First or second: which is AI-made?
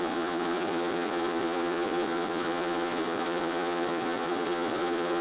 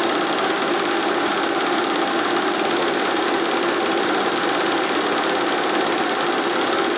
first